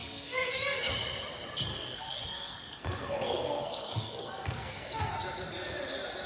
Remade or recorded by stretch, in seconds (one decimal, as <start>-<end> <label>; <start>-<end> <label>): 0.0-0.9 remade; 0.9-1.7 recorded; 1.7-5.1 remade; 5.1-6.3 recorded